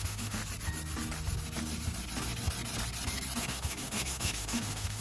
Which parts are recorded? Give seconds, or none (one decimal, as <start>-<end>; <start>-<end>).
0.4-3.4